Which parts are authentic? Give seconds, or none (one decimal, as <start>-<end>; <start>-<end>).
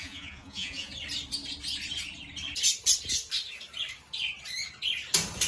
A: 0.9-5.5